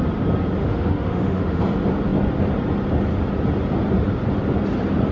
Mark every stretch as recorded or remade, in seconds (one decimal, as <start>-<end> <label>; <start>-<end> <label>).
0.0-0.6 recorded; 0.6-1.6 remade; 1.6-5.1 recorded